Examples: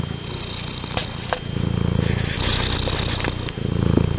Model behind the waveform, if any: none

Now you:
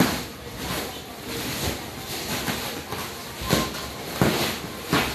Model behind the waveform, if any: none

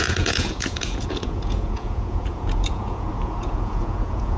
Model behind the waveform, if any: vocoder, Vocos